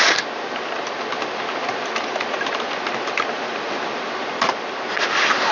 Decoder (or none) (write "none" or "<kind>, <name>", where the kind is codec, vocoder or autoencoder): none